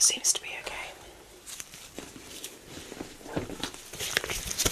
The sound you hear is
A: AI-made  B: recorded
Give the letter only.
A